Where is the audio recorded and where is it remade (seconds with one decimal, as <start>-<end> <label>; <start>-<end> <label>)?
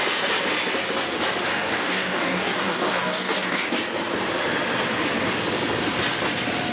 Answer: 0.0-1.5 recorded; 1.5-3.7 remade; 3.7-6.7 recorded